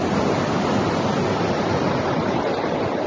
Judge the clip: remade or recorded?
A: recorded